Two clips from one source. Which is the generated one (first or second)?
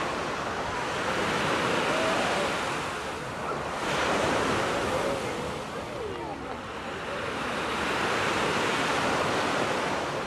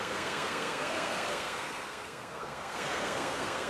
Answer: second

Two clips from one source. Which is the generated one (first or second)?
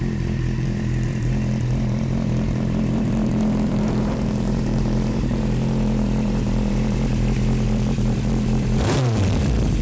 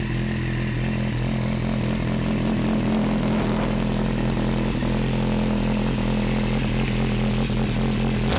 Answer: first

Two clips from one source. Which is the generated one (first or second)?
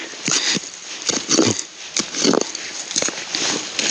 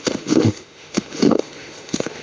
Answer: second